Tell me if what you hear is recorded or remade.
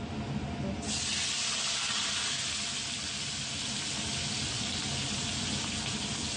recorded